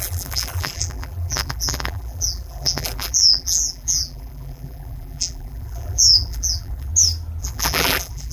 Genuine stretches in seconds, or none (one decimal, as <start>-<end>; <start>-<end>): 6.9-7.4